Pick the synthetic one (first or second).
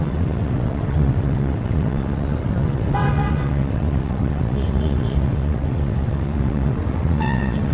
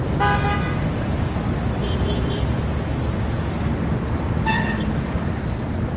first